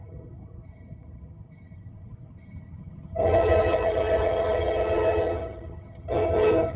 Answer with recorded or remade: remade